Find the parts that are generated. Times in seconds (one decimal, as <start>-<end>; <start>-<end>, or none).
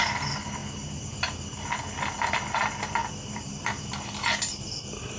3.0-3.5